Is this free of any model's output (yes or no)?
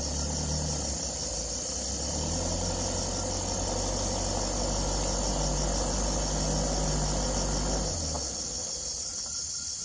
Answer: yes